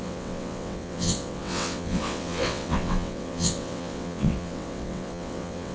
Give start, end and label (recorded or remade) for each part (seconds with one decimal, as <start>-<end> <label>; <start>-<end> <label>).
0.0-5.7 remade